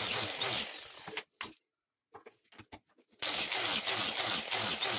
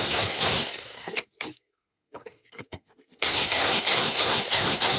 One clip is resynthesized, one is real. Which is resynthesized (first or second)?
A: second